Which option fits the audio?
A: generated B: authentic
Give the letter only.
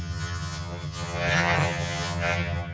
A